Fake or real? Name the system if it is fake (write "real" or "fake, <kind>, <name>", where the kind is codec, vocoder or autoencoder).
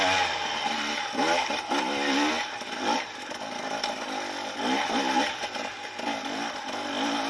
real